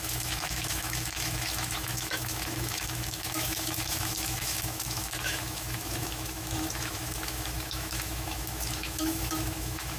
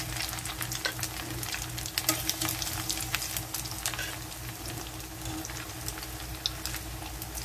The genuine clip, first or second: second